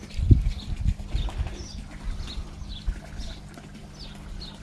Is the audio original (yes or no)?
yes